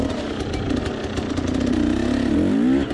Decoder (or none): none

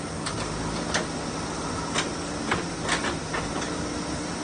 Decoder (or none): none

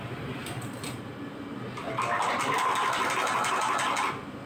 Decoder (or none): none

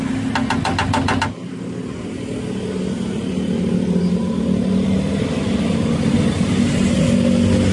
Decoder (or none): none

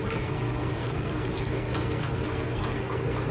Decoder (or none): codec, SNAC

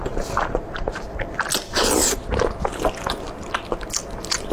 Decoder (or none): none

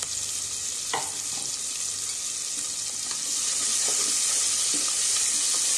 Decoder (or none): none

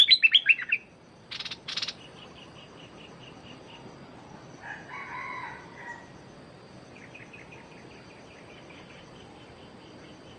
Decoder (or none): none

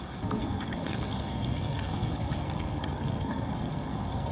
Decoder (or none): codec, SNAC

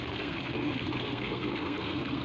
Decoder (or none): codec, SNAC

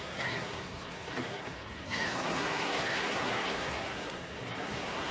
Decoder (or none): codec, SNAC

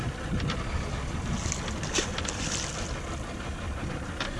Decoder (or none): none